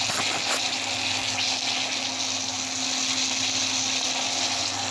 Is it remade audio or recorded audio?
recorded